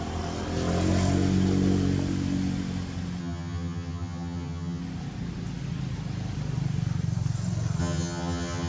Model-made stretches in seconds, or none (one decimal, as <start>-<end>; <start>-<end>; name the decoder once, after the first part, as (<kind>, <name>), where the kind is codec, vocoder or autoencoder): 3.2-4.8 (vocoder, HiFi-GAN); 7.8-8.7